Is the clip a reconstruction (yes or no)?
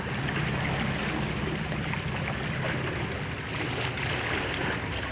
no